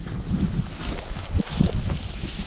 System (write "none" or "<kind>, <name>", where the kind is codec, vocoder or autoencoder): none